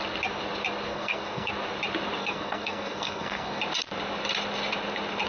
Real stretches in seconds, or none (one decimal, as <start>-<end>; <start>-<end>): 0.0-0.9; 1.5-2.2; 3.6-5.3